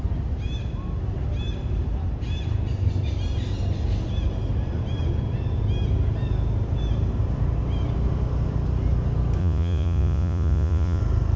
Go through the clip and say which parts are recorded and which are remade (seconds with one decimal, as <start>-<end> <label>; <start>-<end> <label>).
0.0-9.4 recorded; 9.4-11.0 remade; 11.0-11.4 recorded